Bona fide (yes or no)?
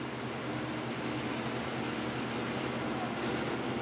yes